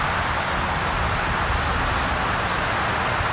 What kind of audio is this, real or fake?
real